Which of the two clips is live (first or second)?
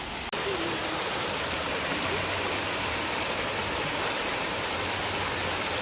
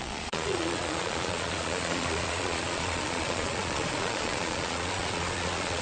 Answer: first